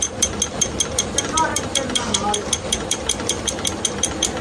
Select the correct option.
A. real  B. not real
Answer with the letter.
A